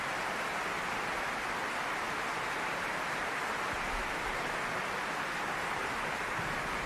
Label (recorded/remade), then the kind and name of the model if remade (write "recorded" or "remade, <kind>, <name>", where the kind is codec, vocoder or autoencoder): recorded